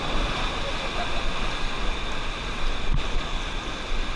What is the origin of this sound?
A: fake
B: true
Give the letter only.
B